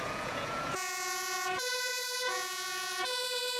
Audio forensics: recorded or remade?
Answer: remade